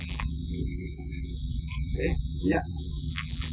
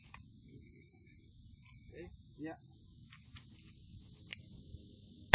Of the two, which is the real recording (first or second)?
second